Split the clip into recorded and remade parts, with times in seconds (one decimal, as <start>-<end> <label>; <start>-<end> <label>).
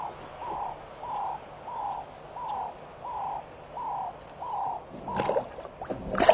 0.0-6.3 recorded